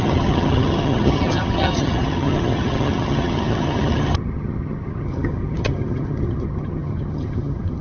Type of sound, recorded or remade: remade